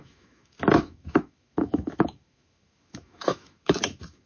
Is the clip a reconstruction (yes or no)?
yes